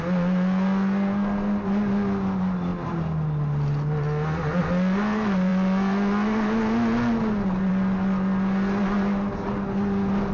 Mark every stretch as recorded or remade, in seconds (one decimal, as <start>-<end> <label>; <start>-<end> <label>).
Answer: 0.0-10.3 recorded